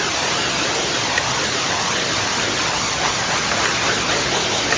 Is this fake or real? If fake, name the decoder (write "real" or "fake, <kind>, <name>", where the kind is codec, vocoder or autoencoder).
real